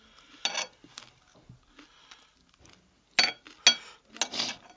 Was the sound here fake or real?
real